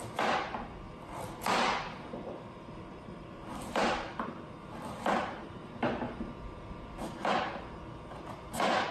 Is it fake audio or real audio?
real